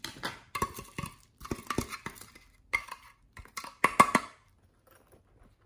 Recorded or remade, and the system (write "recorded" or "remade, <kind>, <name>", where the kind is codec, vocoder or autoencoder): recorded